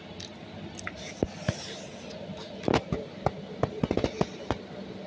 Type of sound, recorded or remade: recorded